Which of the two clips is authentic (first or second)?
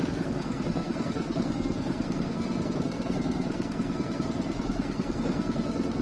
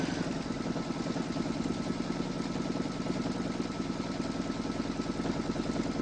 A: second